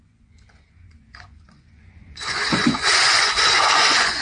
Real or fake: fake